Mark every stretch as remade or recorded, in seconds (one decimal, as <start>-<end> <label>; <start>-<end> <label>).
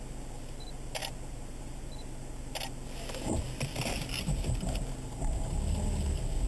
0.0-6.5 recorded